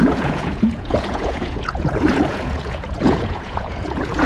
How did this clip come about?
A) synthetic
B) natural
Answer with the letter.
A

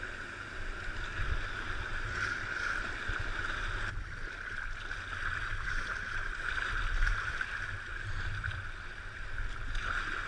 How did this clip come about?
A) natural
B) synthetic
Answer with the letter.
A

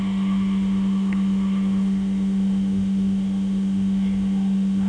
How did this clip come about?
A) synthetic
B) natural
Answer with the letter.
A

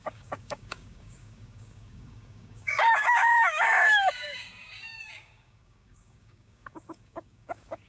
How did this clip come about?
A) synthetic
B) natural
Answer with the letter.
A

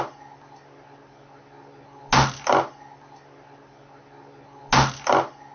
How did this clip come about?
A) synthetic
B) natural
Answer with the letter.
B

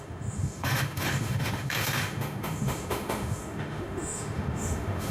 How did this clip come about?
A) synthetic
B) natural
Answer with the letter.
A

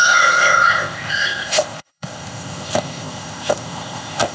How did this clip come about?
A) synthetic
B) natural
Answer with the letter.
A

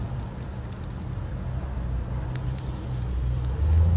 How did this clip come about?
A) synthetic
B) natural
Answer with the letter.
B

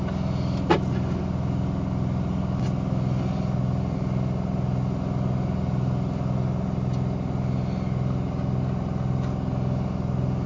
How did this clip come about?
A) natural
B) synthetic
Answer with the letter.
A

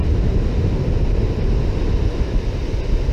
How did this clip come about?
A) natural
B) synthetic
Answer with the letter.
A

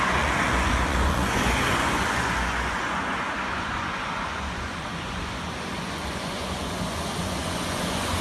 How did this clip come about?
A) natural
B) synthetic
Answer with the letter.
B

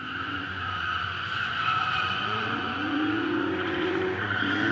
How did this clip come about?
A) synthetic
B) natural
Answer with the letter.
A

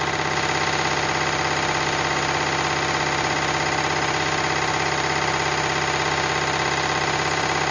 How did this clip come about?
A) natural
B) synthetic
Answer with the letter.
A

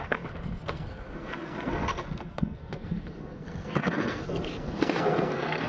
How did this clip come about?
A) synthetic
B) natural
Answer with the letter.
A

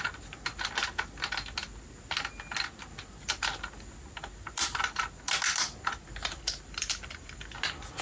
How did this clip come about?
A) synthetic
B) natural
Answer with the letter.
B